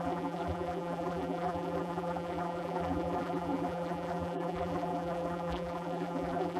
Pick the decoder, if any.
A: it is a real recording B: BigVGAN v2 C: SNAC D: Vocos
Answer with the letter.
B